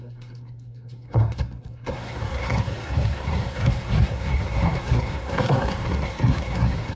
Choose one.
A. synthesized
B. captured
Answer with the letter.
A